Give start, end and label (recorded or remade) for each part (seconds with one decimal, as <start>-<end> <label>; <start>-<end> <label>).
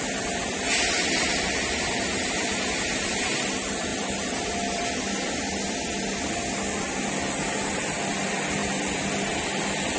0.0-3.9 recorded; 3.9-5.0 remade; 5.0-10.0 recorded